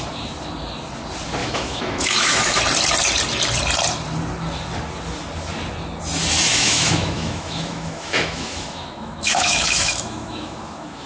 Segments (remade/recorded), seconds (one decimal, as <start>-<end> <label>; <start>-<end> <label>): 0.0-1.4 recorded; 1.4-2.6 remade; 2.6-6.5 recorded; 6.5-11.1 remade